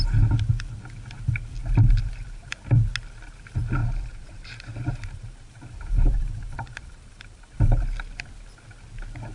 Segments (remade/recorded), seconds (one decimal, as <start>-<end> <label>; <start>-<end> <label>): 0.0-1.6 recorded; 1.6-2.5 remade; 2.5-3.8 recorded; 3.8-7.9 remade; 7.9-9.3 recorded